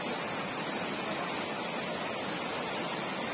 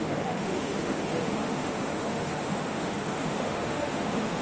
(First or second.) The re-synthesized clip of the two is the second